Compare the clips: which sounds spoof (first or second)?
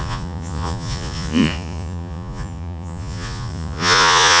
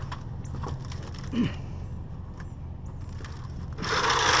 first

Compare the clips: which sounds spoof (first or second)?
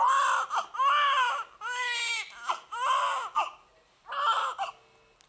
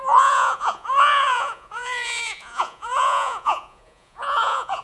second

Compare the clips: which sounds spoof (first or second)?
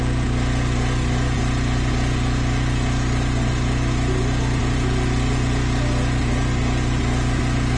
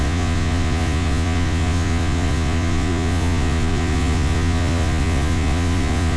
second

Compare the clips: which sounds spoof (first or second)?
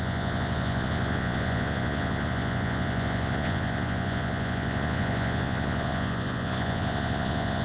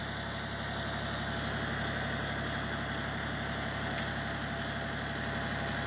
first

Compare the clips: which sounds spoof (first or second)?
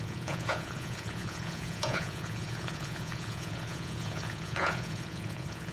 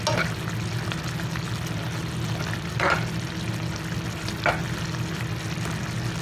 first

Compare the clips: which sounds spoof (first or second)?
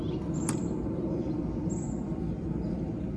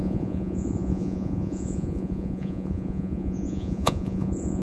second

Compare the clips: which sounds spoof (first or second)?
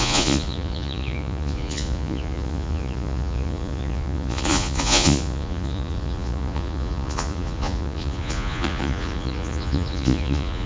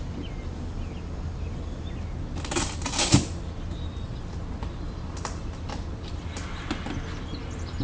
first